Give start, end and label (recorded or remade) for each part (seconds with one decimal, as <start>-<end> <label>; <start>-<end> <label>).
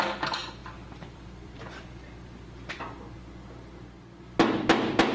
0.0-0.6 recorded; 0.6-3.0 remade; 3.0-5.1 recorded